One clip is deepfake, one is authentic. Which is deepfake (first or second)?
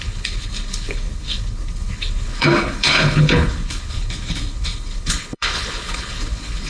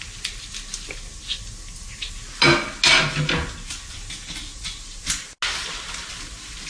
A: first